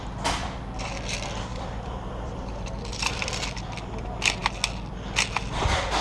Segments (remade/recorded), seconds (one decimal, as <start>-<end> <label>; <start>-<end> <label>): 0.0-1.5 recorded; 1.5-3.3 remade; 3.3-6.0 recorded